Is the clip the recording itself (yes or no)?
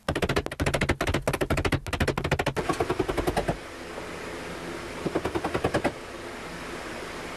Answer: yes